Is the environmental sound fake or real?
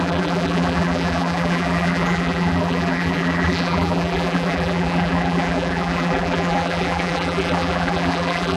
fake